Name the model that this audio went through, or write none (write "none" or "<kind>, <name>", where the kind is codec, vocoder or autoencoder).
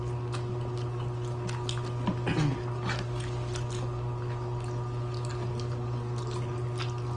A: none